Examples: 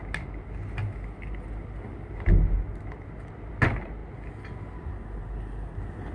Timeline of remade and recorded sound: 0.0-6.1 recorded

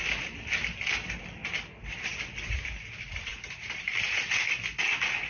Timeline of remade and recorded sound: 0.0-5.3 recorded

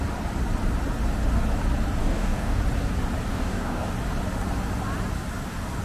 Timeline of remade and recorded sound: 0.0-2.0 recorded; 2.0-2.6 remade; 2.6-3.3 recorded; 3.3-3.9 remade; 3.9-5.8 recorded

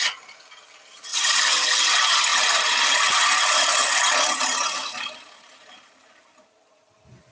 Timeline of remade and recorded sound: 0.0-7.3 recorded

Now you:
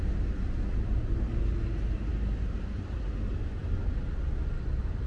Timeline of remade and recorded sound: 0.0-5.1 recorded